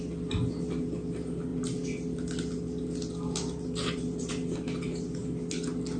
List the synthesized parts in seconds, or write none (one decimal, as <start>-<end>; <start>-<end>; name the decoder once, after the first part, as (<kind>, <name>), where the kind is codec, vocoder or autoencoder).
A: none